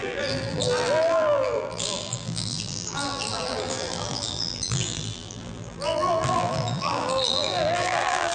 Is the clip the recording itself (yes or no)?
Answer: no